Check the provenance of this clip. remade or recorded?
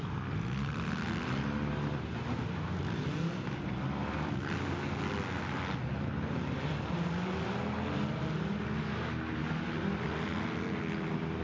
recorded